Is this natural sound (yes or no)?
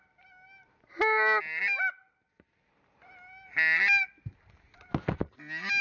yes